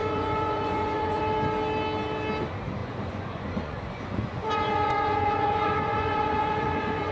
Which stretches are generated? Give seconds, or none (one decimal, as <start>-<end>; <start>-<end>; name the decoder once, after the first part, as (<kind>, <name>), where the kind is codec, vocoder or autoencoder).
0.0-1.2 (vocoder, Vocos); 2.8-7.1

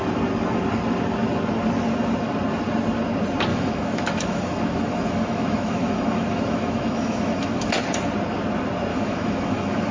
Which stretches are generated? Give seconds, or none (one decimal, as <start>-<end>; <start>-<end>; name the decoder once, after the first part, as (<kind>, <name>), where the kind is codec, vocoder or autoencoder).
3.5-7.7 (autoencoder, DAC-VAE); 8.9-9.9

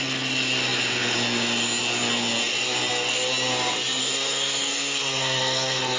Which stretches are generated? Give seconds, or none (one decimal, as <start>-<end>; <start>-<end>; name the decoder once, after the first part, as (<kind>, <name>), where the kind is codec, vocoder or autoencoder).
4.0-6.0 (codec, SNAC)